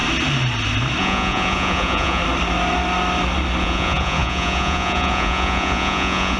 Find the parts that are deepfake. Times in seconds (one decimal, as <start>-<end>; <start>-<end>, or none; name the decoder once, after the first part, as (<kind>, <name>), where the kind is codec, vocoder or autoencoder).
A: 1.0-2.2 (vocoder, Vocos); 3.6-6.4